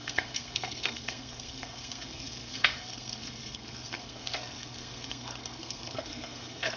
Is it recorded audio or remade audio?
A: remade